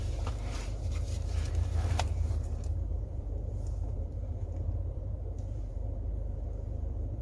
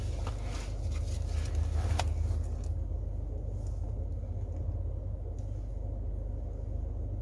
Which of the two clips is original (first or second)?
second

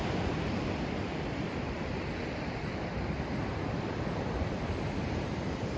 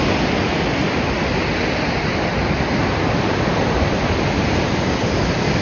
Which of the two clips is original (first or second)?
second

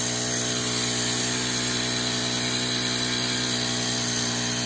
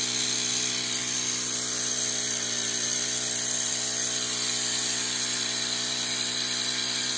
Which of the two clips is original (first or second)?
first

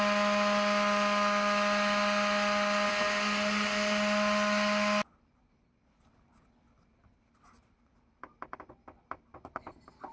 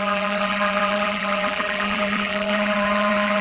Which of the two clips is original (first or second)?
first